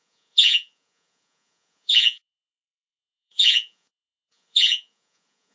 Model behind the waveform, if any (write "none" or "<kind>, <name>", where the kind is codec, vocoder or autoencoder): vocoder, Vocos